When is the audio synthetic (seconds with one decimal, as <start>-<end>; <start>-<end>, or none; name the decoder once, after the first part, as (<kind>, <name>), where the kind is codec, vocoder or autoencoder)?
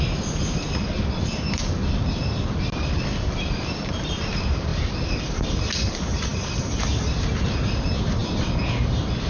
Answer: none